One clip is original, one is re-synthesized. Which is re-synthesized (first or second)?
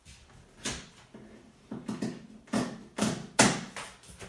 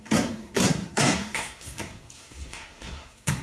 second